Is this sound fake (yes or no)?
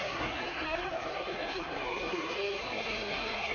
yes